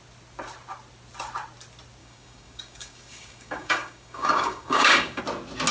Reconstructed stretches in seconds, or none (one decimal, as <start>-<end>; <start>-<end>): 2.0-5.2